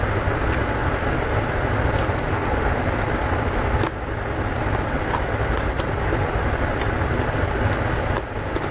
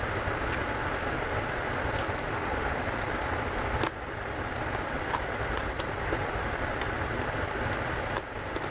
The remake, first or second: second